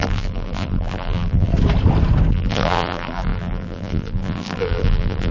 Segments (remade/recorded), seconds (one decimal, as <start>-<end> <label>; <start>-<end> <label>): 0.0-1.5 remade; 1.5-2.3 recorded; 2.3-5.3 remade